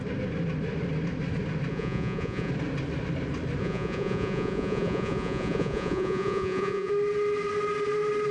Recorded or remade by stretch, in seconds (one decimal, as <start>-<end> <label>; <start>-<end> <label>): 0.0-1.7 recorded; 1.7-2.5 remade; 2.5-3.6 recorded; 3.6-6.9 remade; 6.9-8.3 recorded